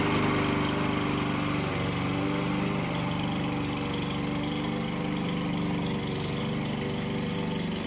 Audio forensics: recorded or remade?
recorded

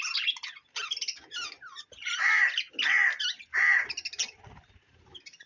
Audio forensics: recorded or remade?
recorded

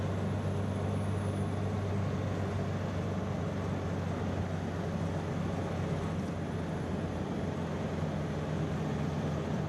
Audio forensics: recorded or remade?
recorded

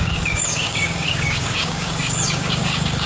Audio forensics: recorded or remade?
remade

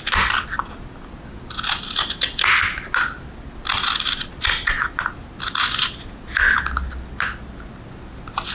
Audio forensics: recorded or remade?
recorded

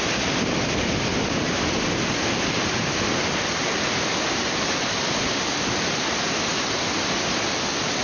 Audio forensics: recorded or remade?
recorded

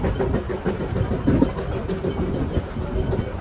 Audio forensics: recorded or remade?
recorded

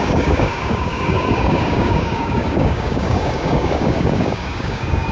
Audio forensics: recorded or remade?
remade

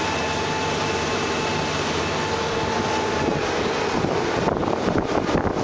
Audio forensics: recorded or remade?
recorded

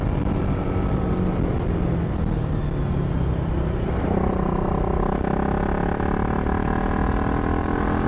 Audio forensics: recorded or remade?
recorded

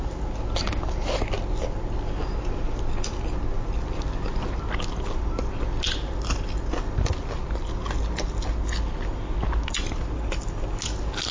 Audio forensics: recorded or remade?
recorded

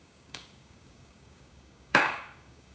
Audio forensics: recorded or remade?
remade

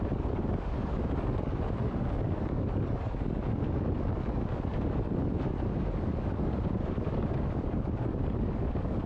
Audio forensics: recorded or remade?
remade